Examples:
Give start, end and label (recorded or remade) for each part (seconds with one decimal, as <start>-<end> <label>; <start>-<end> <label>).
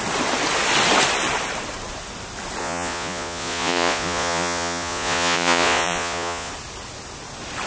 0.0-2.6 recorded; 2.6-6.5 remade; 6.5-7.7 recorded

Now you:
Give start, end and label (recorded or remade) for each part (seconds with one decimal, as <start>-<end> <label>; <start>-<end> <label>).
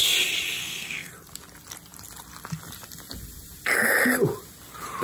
0.0-0.6 recorded; 0.6-1.1 remade; 1.1-5.0 recorded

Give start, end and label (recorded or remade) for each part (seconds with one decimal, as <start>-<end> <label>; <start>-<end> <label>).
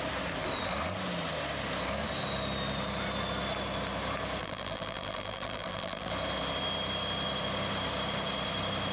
0.0-4.4 recorded; 4.4-6.1 remade; 6.1-8.9 recorded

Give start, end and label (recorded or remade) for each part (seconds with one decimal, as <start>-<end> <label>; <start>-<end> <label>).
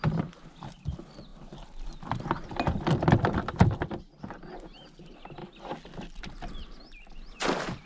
0.0-7.9 recorded